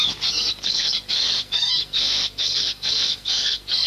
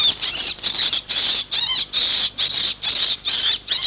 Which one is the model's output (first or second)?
first